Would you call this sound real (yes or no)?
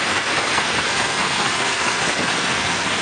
no